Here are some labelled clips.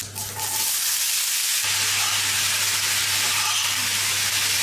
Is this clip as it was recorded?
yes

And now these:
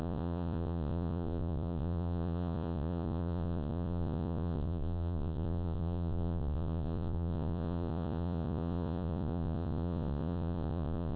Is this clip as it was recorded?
no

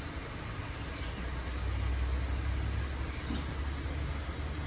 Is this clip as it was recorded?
yes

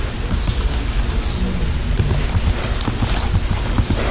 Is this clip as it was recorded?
yes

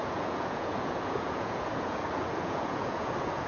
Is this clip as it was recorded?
no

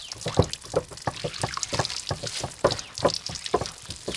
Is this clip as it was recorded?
yes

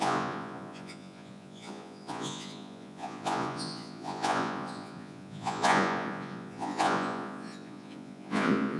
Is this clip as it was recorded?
no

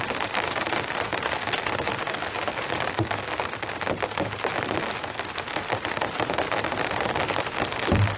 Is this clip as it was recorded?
yes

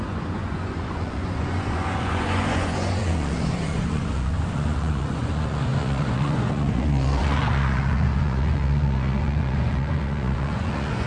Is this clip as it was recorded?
no